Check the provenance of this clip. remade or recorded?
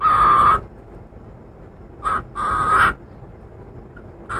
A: recorded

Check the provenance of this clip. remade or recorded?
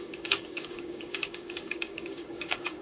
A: remade